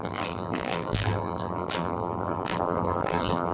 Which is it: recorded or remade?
remade